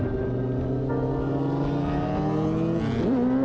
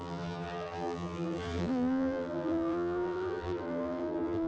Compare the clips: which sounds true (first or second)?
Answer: first